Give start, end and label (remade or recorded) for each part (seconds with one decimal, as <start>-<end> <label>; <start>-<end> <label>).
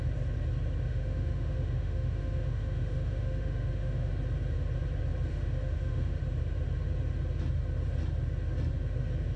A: 0.0-0.9 recorded; 0.9-4.1 remade; 4.1-5.3 recorded; 5.3-6.2 remade; 6.2-9.4 recorded